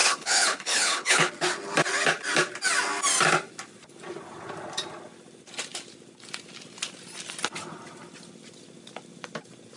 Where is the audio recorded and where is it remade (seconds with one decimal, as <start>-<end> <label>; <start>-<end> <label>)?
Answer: 0.0-1.3 remade; 1.3-9.8 recorded

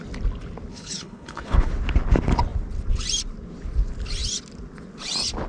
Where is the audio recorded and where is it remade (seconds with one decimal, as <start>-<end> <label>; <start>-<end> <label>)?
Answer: 0.0-0.7 recorded; 0.7-1.7 remade; 1.7-5.5 recorded

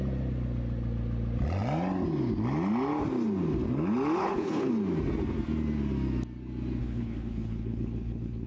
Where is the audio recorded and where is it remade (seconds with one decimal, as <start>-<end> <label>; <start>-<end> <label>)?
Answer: 0.0-4.2 recorded; 4.2-4.7 remade; 4.7-6.8 recorded; 6.8-8.5 remade